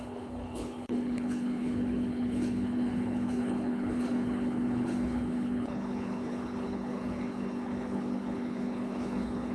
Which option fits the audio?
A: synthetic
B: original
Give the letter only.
A